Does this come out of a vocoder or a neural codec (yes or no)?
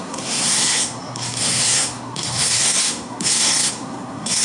yes